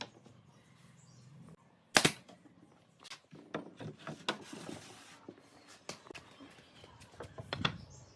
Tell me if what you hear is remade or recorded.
recorded